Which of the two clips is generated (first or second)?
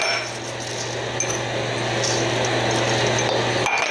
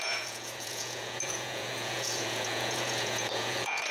second